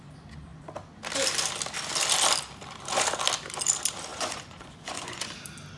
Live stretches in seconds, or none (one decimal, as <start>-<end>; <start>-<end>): 0.0-4.1; 5.3-5.8